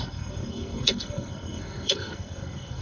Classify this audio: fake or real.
fake